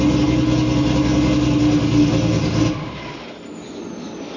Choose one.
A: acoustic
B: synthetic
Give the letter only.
A